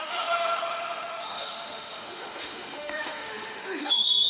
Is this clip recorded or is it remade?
remade